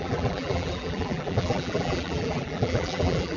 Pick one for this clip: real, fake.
fake